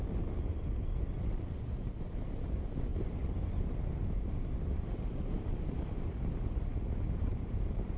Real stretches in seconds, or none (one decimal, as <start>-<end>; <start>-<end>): 0.0-2.9